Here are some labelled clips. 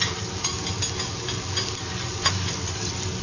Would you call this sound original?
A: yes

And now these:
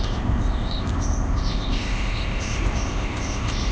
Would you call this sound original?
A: no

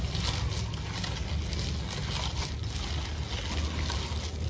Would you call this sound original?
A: yes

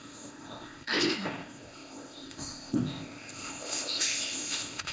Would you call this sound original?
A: no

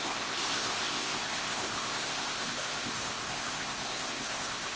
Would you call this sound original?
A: no